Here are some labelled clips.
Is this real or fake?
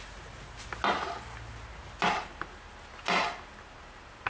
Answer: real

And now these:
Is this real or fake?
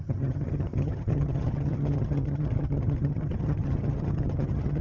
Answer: fake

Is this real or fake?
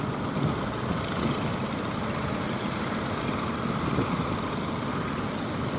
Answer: real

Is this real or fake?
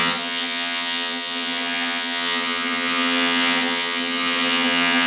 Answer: fake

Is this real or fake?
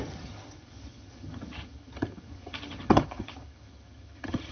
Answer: fake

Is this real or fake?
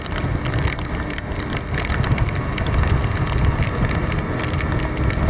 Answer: real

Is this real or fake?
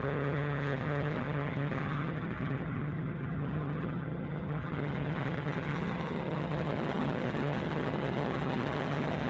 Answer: fake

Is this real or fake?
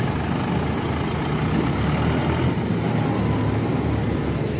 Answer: real